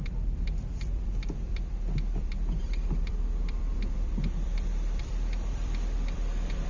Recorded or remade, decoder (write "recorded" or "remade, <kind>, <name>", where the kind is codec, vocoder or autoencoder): remade, vocoder, BigVGAN v2